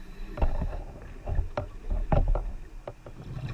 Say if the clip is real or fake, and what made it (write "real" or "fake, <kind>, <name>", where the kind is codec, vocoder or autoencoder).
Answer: real